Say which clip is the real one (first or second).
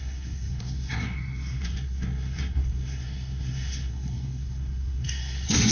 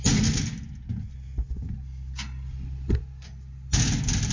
second